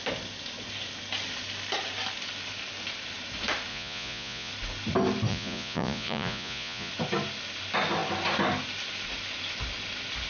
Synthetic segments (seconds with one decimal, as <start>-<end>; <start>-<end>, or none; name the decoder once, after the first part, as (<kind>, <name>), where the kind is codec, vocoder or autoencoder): 3.7-4.5 (vocoder, Vocos); 5.3-6.9

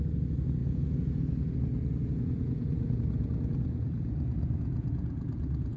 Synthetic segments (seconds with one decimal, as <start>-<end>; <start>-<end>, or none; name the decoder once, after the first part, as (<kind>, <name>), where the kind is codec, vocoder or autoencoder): 0.6-1.2 (vocoder, Vocos); 2.0-5.8

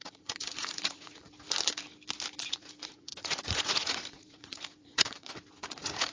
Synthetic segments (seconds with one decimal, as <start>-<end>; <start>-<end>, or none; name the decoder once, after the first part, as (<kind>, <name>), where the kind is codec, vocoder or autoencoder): 0.0-1.3 (vocoder, Vocos); 2.5-6.1

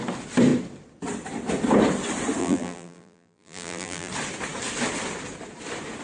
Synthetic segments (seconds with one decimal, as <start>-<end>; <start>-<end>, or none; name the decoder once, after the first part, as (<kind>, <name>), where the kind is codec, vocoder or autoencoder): 2.4-4.1 (vocoder, BigVGAN v2)

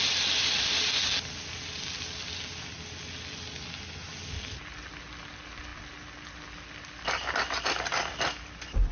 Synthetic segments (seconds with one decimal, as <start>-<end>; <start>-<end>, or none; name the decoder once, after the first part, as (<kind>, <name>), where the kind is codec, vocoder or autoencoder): none

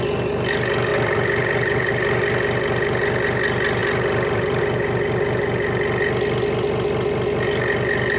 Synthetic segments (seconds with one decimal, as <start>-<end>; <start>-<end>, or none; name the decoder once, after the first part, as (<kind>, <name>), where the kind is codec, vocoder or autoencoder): 0.9-1.9 (vocoder, BigVGAN v2); 3.8-4.6

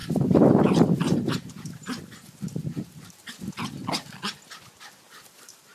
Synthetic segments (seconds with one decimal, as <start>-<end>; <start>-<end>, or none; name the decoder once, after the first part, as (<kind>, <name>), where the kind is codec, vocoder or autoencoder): 0.0-2.0 (vocoder, BigVGAN v2); 2.6-3.2

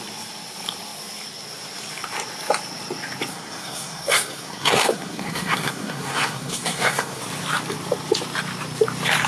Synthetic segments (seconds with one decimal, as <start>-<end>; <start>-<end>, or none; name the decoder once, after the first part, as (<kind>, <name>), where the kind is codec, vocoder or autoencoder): 3.3-7.2 (codec, SNAC)